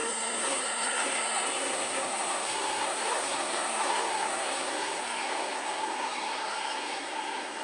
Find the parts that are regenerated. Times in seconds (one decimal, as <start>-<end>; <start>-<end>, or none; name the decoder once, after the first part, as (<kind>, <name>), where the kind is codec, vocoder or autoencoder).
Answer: 0.0-7.6 (codec, SNAC)